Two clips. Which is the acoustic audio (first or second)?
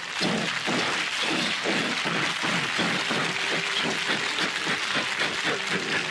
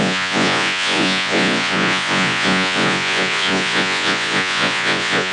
first